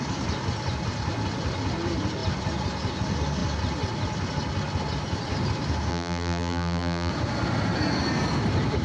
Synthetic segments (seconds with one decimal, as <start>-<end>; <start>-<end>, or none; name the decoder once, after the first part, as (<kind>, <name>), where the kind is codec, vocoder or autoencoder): 5.9-7.1 (vocoder, BigVGAN v2)

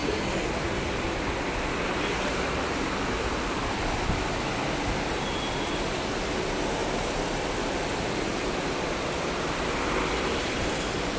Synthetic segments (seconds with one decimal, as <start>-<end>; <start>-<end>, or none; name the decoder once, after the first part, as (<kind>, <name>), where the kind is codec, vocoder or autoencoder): 6.8-8.5 (vocoder, BigVGAN v2)

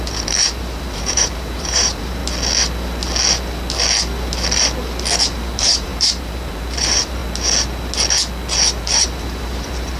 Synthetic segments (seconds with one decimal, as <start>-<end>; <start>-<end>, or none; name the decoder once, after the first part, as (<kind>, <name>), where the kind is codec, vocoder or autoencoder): 0.0-2.2 (vocoder, BigVGAN v2); 5.2-7.2; 8.8-10.0